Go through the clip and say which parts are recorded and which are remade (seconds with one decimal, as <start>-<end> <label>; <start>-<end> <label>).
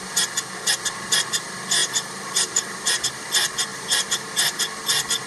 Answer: 0.0-1.8 recorded; 1.8-3.0 remade; 3.0-3.7 recorded; 3.7-4.2 remade; 4.2-5.3 recorded